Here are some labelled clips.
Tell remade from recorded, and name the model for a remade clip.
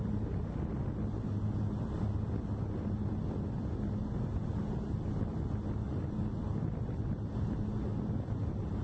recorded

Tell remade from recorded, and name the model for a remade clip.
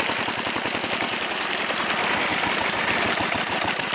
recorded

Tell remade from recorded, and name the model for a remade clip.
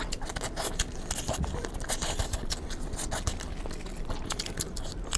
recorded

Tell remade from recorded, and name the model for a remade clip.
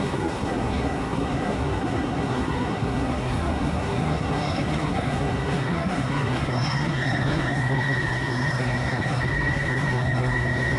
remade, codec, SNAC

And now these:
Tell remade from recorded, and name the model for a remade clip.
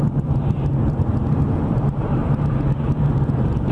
remade, vocoder, BigVGAN v2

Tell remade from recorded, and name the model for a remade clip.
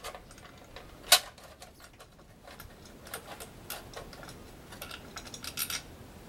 recorded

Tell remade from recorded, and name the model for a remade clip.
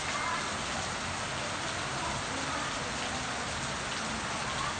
recorded